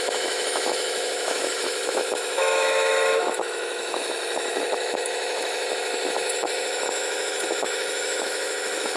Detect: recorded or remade remade